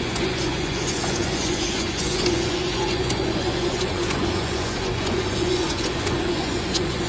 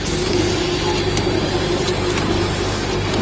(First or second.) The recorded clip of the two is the second